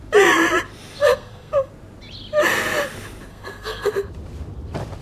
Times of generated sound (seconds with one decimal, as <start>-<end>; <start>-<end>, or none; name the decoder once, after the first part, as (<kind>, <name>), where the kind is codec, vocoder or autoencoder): 1.0-1.7 (codec, SNAC); 3.3-3.9